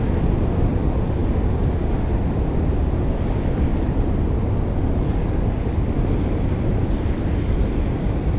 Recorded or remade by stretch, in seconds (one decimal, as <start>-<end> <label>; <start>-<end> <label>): 0.0-3.7 recorded; 3.7-7.8 remade; 7.8-8.4 recorded